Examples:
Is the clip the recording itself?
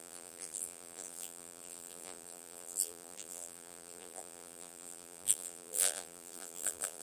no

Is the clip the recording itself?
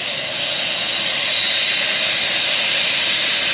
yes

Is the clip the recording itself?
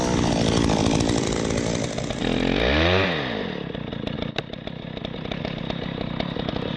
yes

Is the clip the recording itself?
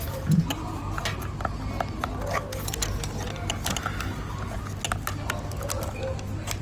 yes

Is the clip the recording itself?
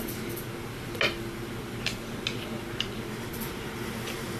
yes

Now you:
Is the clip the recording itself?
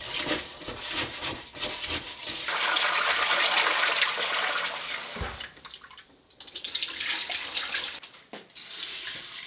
yes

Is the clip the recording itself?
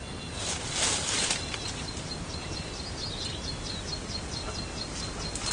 yes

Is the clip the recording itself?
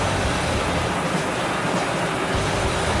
yes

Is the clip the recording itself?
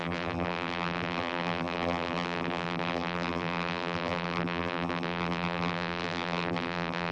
no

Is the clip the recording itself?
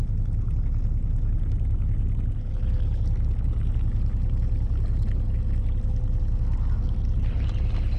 yes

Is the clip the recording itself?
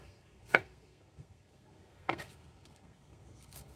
no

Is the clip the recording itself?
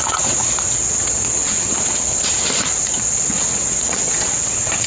no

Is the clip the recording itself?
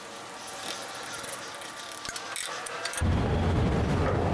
yes